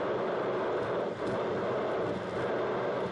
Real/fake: real